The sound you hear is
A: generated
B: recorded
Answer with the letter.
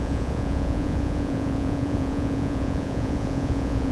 A